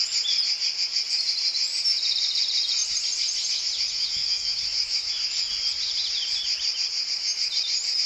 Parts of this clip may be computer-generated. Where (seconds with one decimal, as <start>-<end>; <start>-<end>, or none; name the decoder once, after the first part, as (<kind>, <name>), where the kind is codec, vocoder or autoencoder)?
4.2-5.1 (autoencoder, DAC-VAE)